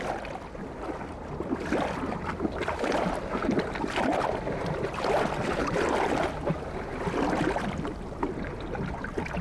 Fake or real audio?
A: real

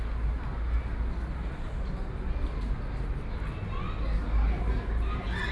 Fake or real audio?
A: real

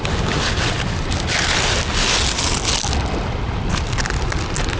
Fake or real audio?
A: real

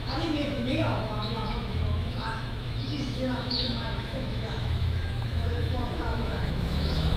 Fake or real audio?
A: fake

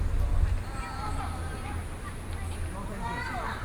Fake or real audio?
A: real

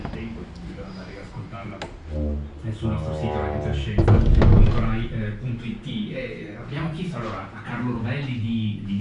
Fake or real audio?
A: real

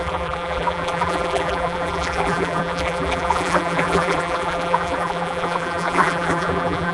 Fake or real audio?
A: fake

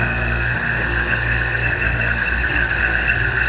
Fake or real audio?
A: fake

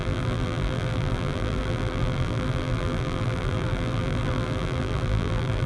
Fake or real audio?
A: fake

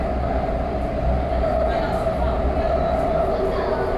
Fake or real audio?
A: real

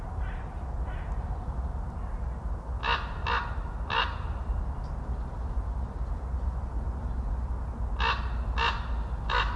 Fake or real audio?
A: real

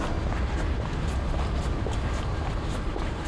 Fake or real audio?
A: real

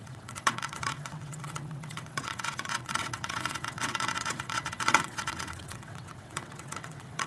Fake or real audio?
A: fake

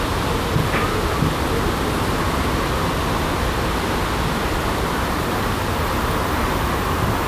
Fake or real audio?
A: real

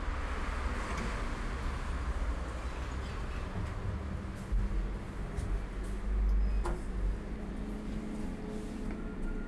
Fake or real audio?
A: real